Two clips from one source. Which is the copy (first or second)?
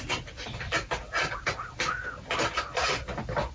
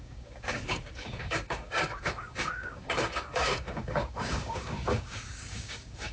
second